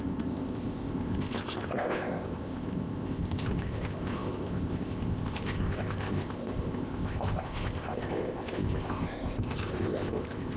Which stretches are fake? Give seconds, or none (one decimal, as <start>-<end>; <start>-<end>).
0.0-10.6